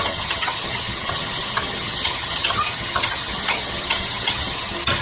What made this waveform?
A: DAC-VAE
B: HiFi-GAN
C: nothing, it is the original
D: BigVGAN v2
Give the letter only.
B